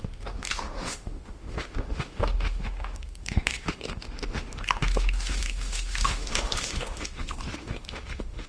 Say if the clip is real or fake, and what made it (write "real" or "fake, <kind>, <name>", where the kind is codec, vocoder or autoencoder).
fake, autoencoder, DAC-VAE